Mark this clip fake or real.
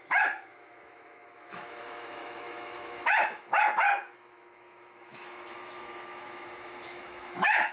fake